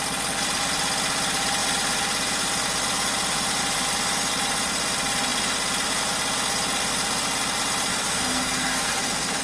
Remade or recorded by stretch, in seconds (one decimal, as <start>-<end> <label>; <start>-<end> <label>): 0.0-7.9 recorded; 7.9-9.4 remade